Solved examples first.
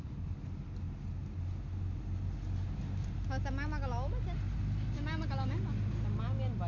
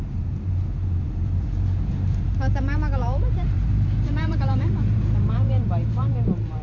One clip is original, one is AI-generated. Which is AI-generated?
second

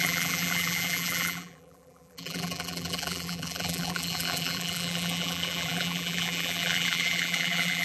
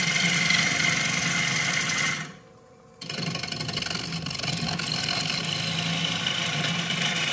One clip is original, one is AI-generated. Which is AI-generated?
first